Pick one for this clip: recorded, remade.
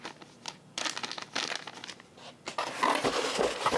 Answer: recorded